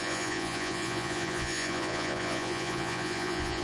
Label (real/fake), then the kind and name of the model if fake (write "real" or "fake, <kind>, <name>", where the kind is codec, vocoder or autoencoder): fake, vocoder, Vocos